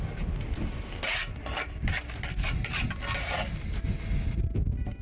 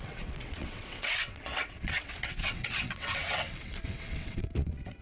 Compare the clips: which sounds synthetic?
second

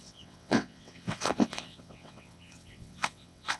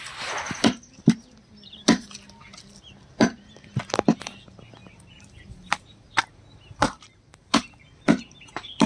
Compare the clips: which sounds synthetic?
first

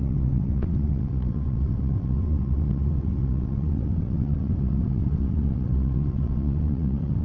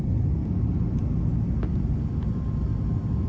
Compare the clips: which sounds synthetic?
first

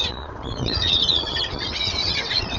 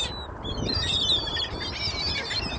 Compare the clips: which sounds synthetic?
first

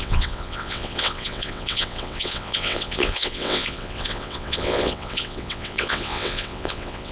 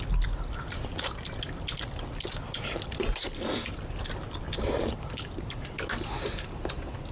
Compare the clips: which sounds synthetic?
first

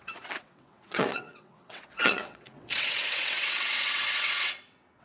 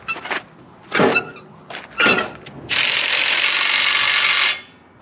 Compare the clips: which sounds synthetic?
first